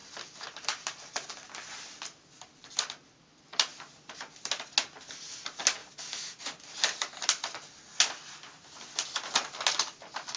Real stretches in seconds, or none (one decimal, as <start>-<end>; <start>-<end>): 1.3-3.7; 4.5-5.8; 6.4-10.4